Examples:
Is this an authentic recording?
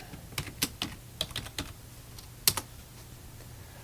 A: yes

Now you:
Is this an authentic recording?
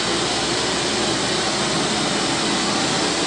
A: yes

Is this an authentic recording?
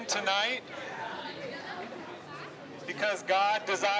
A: yes